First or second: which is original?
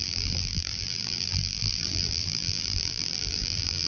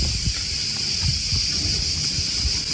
second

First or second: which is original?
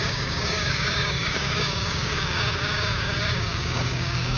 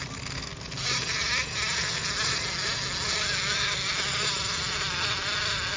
second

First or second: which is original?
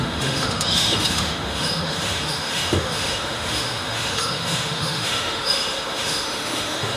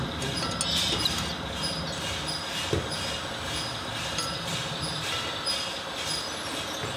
second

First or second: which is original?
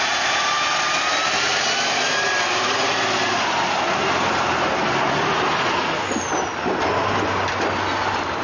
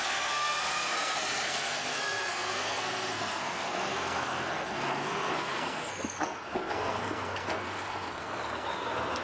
first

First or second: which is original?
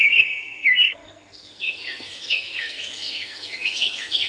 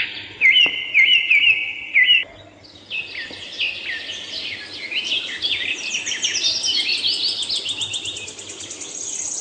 second